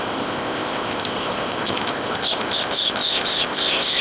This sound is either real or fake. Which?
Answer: fake